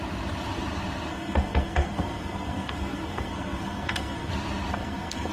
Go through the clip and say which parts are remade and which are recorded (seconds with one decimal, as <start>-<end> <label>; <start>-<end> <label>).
0.0-1.1 recorded; 1.1-4.3 remade; 4.3-4.7 recorded; 4.7-5.3 remade